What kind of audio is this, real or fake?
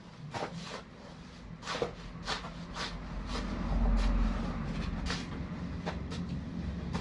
real